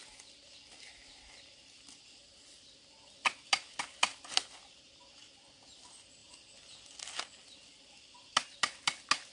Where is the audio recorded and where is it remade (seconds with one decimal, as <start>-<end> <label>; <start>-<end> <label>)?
0.0-9.3 recorded